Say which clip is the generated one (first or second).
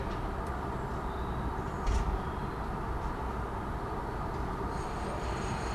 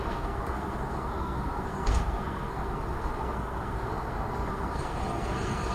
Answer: second